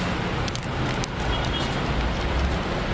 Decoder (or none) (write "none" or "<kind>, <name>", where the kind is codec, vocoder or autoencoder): none